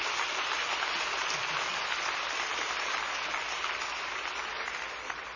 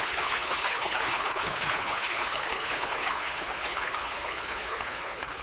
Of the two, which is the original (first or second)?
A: first